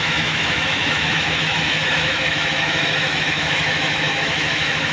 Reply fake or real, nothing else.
fake